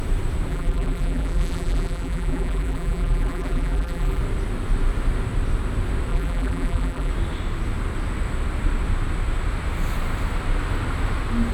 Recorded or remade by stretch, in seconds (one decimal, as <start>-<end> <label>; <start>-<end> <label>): 0.0-0.5 recorded; 0.5-4.2 remade; 4.2-6.1 recorded; 6.1-7.1 remade; 7.1-11.5 recorded